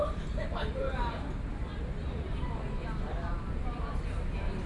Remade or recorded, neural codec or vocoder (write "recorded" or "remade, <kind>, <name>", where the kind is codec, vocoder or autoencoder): remade, vocoder, BigVGAN v2